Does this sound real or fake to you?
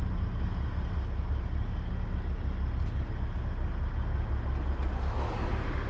real